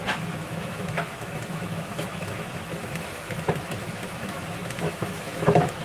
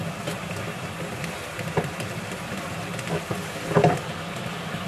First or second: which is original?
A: second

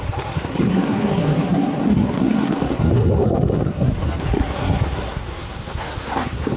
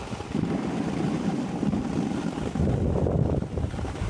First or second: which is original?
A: second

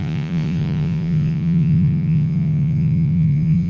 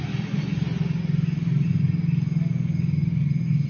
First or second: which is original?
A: second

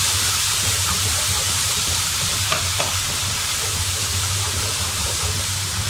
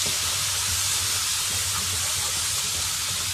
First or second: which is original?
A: second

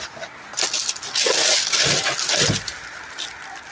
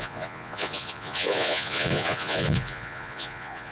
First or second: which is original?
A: first